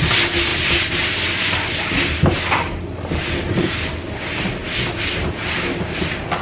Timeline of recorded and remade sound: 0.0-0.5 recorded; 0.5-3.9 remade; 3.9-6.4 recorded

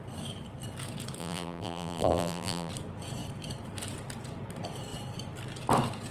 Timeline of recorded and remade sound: 0.0-1.2 recorded; 1.2-2.7 remade; 2.7-6.1 recorded

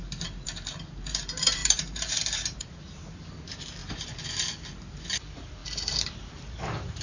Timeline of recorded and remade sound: 0.0-3.8 remade; 3.8-4.9 recorded; 4.9-7.0 remade

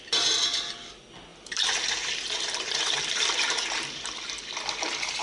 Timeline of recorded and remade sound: 0.0-1.3 recorded; 1.3-4.4 remade; 4.4-5.2 recorded